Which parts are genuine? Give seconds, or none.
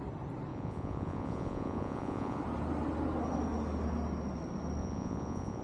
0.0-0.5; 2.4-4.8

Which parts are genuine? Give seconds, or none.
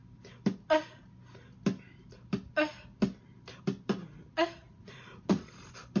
0.0-4.8; 5.5-6.0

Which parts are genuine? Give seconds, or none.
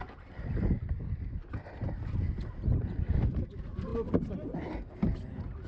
0.0-5.7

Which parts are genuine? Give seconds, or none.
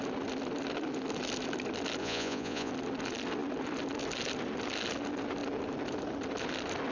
0.0-2.0; 2.7-6.9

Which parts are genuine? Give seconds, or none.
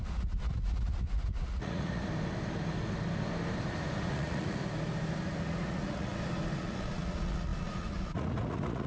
2.0-4.0; 4.6-5.5; 6.1-6.6